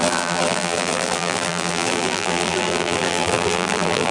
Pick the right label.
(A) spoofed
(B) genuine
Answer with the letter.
A